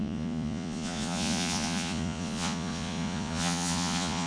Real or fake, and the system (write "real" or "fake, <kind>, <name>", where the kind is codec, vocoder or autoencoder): fake, vocoder, Vocos